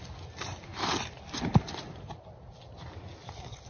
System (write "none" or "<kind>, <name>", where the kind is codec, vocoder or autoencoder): none